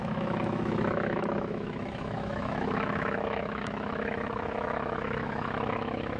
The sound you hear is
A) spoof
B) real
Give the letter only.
A